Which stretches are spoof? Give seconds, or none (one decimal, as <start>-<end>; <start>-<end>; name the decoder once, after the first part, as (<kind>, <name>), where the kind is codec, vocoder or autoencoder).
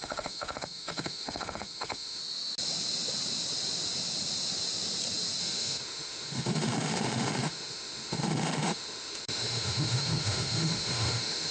0.0-2.2 (autoencoder, DAC-VAE); 5.4-11.5